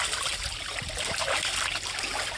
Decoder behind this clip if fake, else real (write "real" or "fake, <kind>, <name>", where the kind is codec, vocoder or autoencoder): real